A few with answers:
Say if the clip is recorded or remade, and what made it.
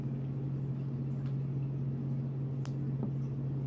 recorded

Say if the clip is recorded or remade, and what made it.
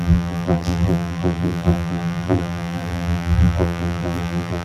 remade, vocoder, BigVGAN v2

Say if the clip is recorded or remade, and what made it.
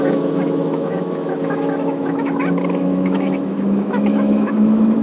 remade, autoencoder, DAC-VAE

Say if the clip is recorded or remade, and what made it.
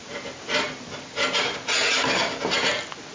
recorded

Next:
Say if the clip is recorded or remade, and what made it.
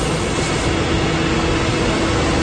recorded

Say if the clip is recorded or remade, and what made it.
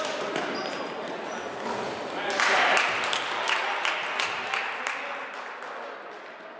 recorded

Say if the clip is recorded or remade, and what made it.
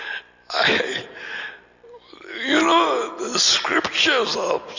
recorded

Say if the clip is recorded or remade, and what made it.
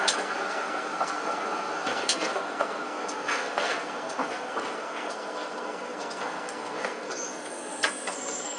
remade, codec, SNAC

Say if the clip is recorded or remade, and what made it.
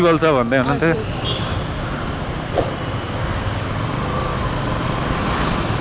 recorded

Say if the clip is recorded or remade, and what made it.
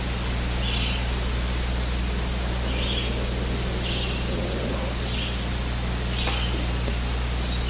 recorded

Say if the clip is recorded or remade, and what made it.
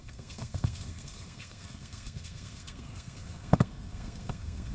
remade, codec, SNAC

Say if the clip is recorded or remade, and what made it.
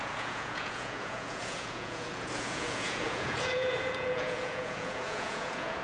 remade, vocoder, Vocos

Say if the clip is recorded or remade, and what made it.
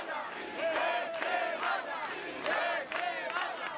recorded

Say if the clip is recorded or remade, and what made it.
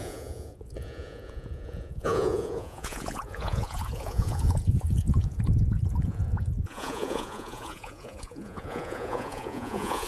remade, vocoder, Vocos